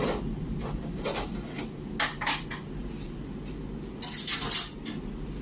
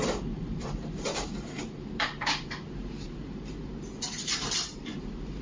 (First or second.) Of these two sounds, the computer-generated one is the second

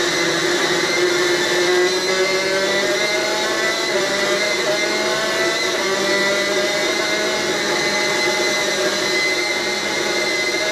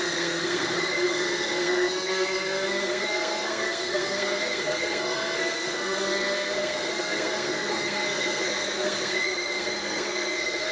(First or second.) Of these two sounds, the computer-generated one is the second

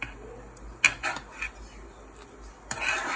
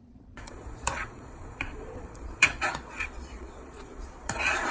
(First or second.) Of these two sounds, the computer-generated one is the second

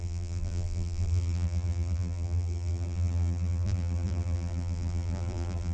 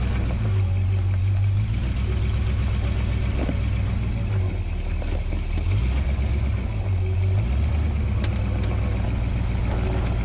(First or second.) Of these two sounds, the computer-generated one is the first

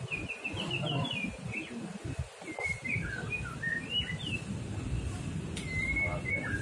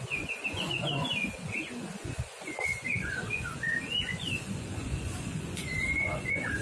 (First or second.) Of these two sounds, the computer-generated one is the second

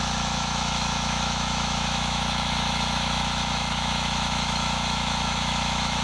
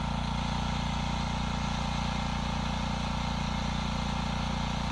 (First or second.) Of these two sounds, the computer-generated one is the first